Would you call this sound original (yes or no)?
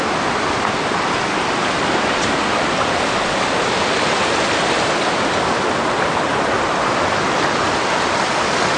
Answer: yes